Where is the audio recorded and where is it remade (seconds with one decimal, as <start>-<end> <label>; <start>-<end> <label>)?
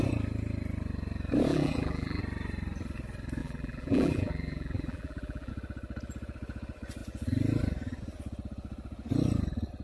0.0-1.5 recorded; 1.5-2.2 remade; 2.2-3.4 recorded; 3.4-5.5 remade; 5.5-9.8 recorded